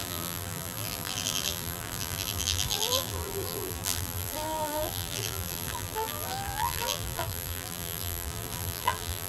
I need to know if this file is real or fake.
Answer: fake